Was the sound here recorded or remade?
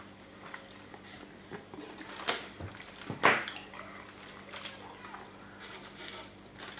recorded